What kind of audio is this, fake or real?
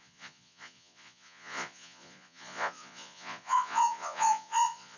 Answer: fake